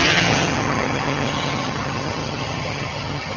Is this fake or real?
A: fake